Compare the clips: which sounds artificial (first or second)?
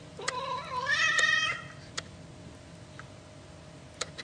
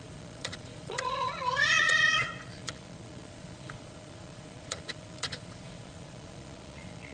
second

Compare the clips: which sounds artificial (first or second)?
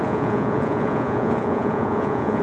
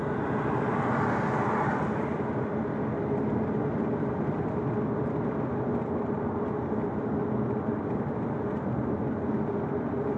first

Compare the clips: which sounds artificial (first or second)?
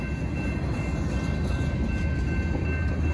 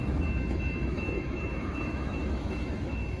second